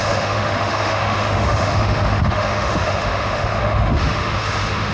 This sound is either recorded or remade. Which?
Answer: remade